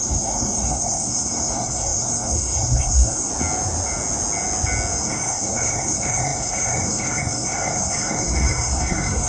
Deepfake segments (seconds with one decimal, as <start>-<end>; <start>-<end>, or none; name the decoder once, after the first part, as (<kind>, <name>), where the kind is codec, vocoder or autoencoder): 0.0-3.3 (codec, SNAC); 5.0-9.3